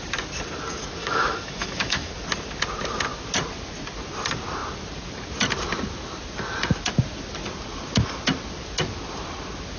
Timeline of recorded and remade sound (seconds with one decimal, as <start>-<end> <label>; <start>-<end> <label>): 0.0-1.0 recorded; 1.0-2.1 remade; 2.1-9.8 recorded